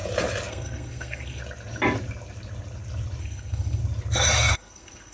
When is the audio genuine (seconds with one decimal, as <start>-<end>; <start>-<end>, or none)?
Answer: 0.0-0.5; 1.4-3.2; 3.8-4.5